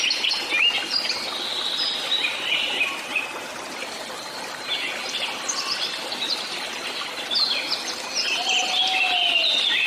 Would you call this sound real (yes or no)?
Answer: yes